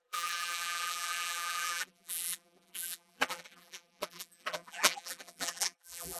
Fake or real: fake